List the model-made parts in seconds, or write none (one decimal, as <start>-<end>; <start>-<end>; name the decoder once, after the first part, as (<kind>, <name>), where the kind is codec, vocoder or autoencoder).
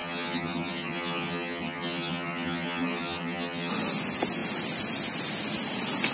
0.0-3.7 (vocoder, HiFi-GAN)